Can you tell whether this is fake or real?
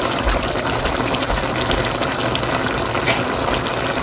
real